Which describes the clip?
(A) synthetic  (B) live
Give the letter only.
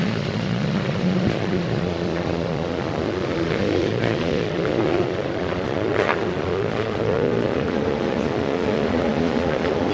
A